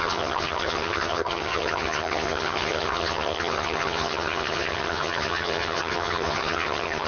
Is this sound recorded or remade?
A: remade